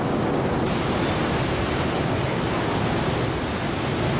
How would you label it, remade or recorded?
recorded